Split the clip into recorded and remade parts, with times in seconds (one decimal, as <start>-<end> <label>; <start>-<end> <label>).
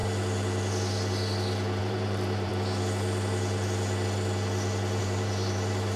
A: 0.0-1.8 recorded; 1.8-2.5 remade; 2.5-5.0 recorded; 5.0-6.0 remade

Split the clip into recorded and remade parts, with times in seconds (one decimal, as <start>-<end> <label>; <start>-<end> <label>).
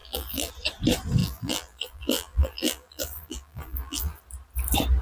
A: 0.0-0.5 remade; 0.5-1.2 recorded; 1.2-4.2 remade; 4.2-5.0 recorded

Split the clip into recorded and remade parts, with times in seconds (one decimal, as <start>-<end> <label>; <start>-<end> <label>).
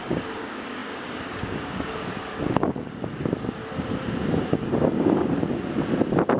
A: 0.0-3.6 remade; 3.6-4.5 recorded; 4.5-5.4 remade; 5.4-6.4 recorded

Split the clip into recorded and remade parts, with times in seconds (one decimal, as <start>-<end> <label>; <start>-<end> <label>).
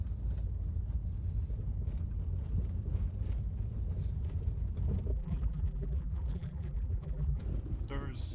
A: 0.0-5.1 recorded; 5.1-7.4 remade; 7.4-8.3 recorded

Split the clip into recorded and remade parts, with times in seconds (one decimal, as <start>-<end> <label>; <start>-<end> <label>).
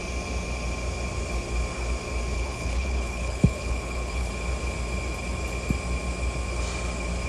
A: 0.0-2.3 recorded; 2.3-4.3 remade; 4.3-7.3 recorded